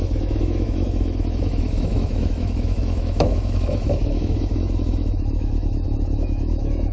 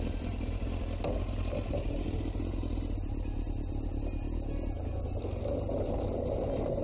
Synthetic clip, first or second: first